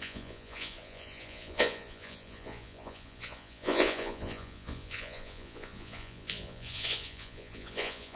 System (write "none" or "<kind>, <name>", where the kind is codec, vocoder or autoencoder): vocoder, Vocos